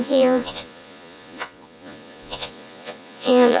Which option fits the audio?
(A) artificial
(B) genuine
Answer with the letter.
A